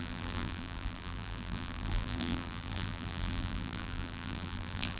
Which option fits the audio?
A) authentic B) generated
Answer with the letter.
B